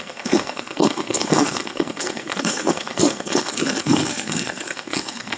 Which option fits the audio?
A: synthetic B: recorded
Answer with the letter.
A